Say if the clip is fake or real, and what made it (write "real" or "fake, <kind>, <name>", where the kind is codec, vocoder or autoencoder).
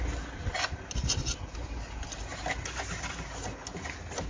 real